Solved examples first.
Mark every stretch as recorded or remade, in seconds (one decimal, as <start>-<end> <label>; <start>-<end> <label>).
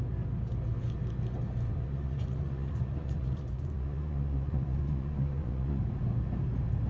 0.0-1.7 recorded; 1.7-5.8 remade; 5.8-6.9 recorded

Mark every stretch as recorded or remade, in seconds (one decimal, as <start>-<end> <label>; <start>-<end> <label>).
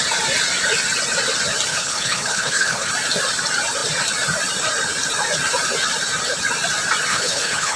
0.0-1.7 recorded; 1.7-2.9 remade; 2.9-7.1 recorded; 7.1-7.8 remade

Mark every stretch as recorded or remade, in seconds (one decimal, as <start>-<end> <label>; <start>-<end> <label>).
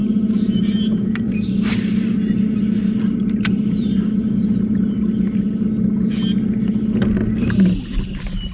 0.0-5.1 remade; 5.1-8.5 recorded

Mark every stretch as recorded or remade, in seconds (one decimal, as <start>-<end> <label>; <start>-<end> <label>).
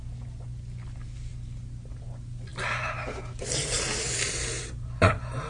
0.0-5.5 recorded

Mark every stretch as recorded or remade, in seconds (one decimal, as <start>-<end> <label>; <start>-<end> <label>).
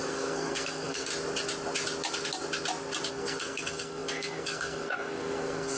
0.0-1.1 remade; 1.1-3.1 recorded; 3.1-5.8 remade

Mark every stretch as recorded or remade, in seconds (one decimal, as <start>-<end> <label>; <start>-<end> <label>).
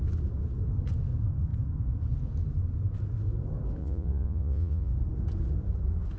0.0-3.8 recorded; 3.8-4.9 remade; 4.9-6.2 recorded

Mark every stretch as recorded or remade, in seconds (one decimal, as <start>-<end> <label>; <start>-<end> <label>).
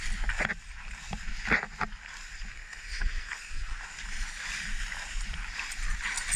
0.0-2.5 recorded; 2.5-3.8 remade; 3.8-6.4 recorded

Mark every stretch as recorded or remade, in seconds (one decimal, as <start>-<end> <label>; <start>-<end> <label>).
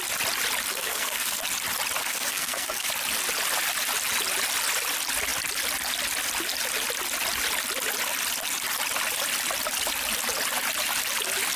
0.0-0.7 recorded; 0.7-1.4 remade; 1.4-2.0 recorded; 2.0-2.9 remade; 2.9-11.6 recorded